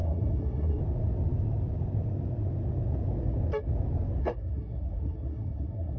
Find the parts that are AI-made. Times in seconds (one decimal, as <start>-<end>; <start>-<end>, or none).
0.0-0.8; 4.2-6.0